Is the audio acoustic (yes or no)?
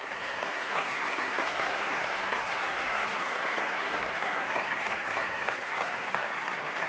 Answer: no